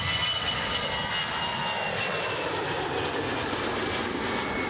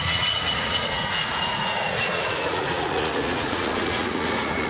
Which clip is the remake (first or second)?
second